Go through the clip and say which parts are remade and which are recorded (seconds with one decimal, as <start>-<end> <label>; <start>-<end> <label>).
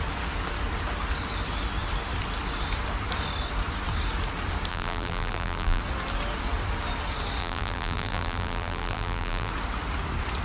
0.0-4.7 recorded; 4.7-5.8 remade; 5.8-7.4 recorded; 7.4-9.5 remade; 9.5-10.4 recorded